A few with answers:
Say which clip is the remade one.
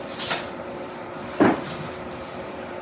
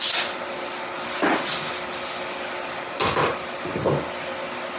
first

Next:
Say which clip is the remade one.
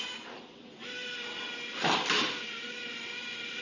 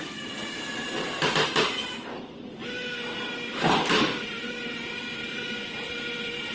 second